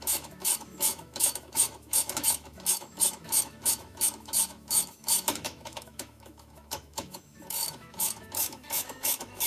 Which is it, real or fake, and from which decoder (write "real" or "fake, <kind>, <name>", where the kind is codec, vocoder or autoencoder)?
fake, autoencoder, DAC-VAE